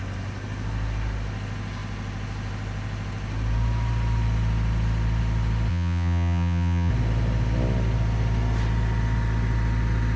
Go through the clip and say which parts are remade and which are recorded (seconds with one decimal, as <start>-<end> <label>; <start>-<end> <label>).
0.0-5.7 recorded; 5.7-6.9 remade; 6.9-10.2 recorded